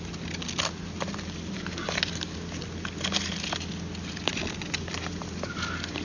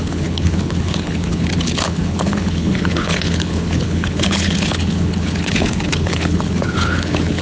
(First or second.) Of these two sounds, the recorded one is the first